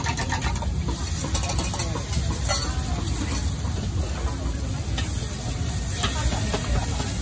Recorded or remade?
recorded